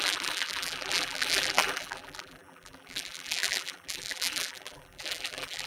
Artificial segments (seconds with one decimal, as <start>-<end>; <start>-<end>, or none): 0.0-5.7